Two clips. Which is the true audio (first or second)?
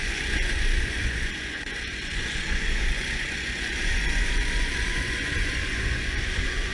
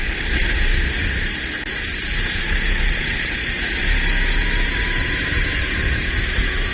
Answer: second